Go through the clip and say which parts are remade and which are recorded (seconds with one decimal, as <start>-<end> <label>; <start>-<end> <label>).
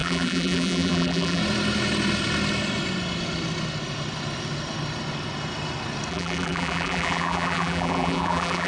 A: 0.0-1.4 remade; 1.4-6.1 recorded; 6.1-8.7 remade